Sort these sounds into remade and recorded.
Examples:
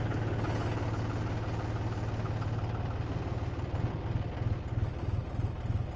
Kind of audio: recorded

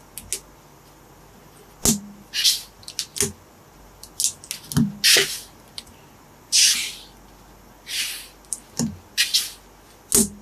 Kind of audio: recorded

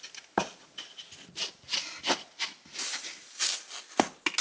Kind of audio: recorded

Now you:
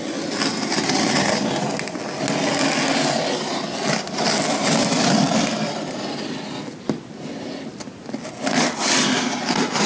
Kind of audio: recorded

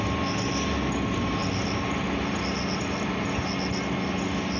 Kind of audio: recorded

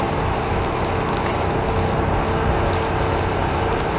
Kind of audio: recorded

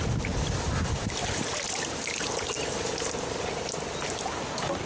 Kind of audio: recorded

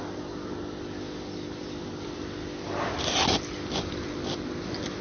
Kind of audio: recorded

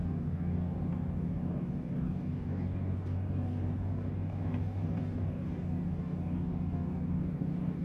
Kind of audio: remade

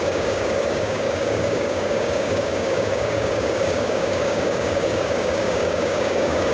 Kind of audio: remade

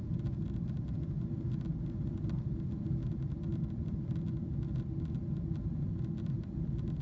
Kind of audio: recorded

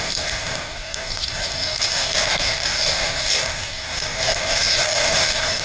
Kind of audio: remade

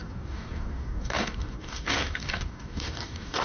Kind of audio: remade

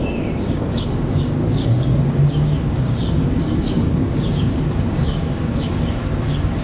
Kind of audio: remade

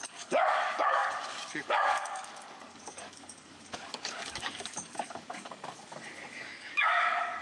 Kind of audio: remade